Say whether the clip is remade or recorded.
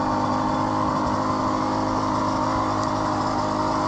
recorded